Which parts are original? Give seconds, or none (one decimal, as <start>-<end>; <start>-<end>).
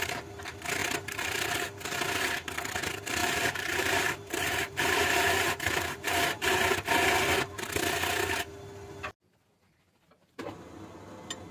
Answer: 0.0-3.2; 6.7-11.5